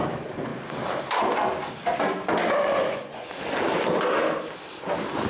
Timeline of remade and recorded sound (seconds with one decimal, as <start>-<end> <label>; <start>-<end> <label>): 0.0-2.6 recorded; 2.6-3.3 remade; 3.3-5.3 recorded